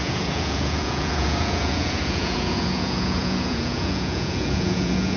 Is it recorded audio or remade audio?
remade